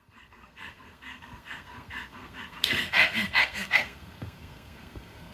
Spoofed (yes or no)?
yes